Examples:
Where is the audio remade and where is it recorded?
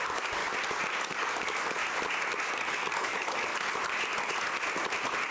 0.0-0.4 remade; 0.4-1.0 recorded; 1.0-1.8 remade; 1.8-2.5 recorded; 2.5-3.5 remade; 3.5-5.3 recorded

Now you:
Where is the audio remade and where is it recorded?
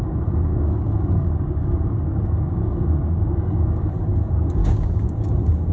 0.0-0.5 recorded; 0.5-3.9 remade; 3.9-4.6 recorded; 4.6-5.3 remade; 5.3-5.7 recorded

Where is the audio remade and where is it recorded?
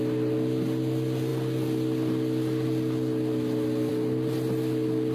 0.0-5.1 recorded